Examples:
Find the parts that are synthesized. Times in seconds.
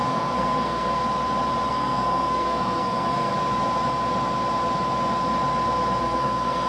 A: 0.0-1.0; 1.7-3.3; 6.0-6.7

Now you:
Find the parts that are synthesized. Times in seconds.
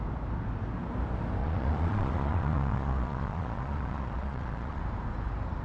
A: 1.4-4.8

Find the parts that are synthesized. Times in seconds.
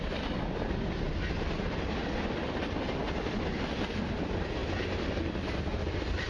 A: none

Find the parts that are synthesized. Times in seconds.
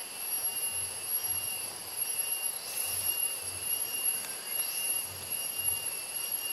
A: 1.3-6.5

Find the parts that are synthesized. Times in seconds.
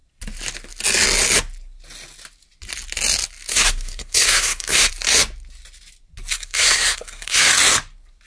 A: 3.5-4.9; 6.3-7.5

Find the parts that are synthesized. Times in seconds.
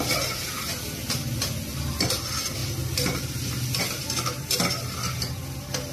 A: none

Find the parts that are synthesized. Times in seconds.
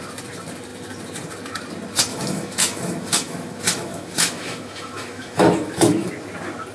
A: 2.1-6.1